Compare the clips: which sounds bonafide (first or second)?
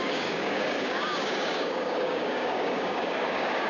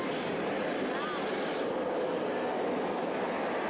second